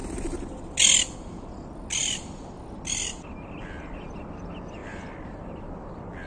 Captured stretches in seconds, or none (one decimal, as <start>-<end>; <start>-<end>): 0.6-4.8; 5.6-6.3